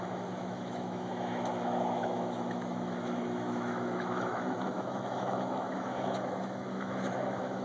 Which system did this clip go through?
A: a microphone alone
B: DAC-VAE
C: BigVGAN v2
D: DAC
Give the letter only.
B